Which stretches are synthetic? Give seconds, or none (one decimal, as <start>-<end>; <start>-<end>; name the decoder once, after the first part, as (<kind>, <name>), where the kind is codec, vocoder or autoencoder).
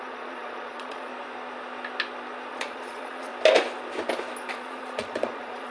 0.0-1.1 (vocoder, Vocos); 2.5-3.3; 4.5-5.7